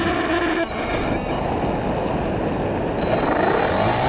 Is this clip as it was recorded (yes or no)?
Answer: yes